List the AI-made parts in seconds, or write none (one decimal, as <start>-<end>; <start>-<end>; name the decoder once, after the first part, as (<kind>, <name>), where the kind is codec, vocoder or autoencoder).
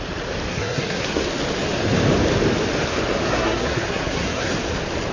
0.5-1.2 (codec, SNAC); 3.3-4.5